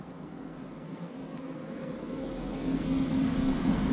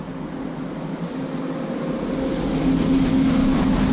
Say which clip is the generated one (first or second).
first